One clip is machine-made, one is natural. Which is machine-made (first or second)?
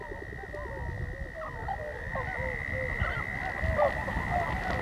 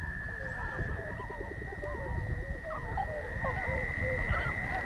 second